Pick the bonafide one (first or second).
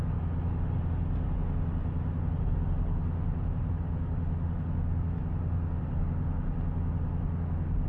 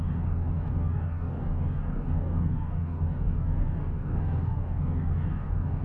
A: first